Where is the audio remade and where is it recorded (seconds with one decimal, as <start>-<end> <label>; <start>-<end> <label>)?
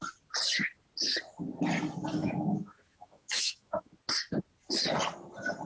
0.0-2.2 recorded; 2.2-3.9 remade; 3.9-5.7 recorded